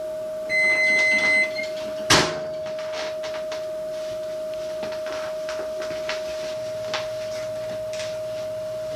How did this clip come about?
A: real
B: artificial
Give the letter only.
A